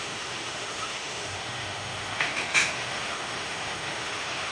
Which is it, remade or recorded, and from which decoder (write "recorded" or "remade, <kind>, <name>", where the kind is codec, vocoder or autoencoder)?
remade, autoencoder, DAC-VAE